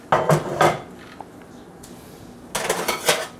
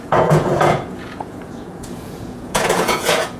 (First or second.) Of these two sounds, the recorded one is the first